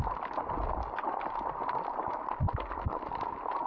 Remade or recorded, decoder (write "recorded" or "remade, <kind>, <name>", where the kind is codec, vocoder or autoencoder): recorded